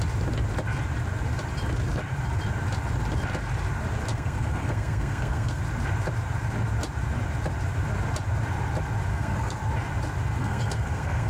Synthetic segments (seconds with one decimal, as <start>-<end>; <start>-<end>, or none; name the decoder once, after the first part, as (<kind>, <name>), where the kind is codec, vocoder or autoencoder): 4.1-5.6 (codec, SNAC); 9.1-9.6; 10.4-11.3